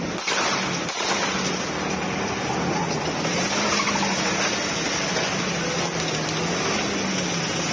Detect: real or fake real